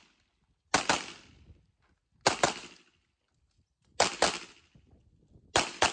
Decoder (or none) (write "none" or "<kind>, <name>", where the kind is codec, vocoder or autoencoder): none